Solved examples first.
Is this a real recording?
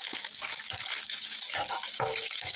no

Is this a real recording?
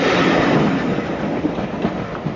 yes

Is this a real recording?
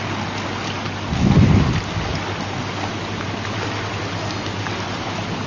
yes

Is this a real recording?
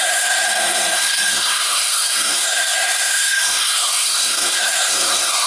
no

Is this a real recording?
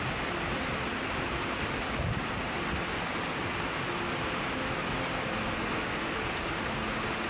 yes